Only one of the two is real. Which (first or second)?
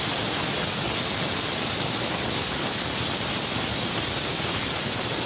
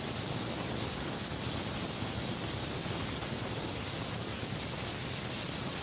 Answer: second